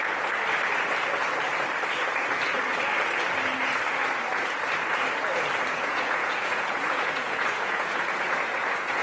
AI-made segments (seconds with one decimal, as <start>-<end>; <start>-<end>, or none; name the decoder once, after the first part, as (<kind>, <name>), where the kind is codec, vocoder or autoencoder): 0.0-0.4 (vocoder, Vocos); 5.7-9.0